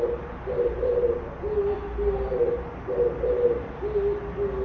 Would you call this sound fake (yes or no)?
no